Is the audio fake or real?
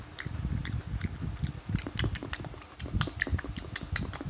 real